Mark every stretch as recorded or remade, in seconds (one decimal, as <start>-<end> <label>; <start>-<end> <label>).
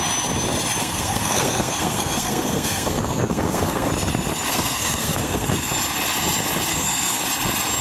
0.0-0.8 recorded; 0.8-3.9 remade; 3.9-4.5 recorded; 4.5-5.7 remade; 5.7-6.7 recorded; 6.7-7.2 remade; 7.2-7.8 recorded